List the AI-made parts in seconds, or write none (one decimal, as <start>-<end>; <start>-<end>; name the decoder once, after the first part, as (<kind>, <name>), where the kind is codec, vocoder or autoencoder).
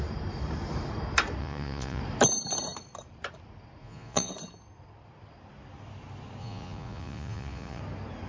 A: 1.4-2.0 (vocoder, Vocos); 3.8-4.3; 6.4-7.8